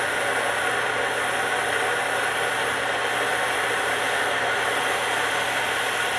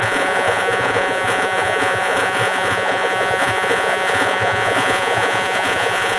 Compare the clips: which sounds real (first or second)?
first